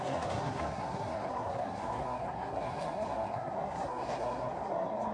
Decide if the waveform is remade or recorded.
remade